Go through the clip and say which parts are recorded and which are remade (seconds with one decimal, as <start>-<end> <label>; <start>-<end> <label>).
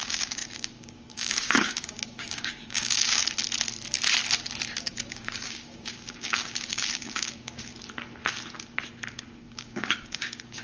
0.0-3.2 remade; 3.2-4.8 recorded; 4.8-7.7 remade; 7.7-9.4 recorded; 9.4-10.6 remade